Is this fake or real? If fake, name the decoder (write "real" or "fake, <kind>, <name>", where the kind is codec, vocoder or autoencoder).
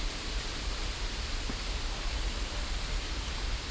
fake, vocoder, BigVGAN v2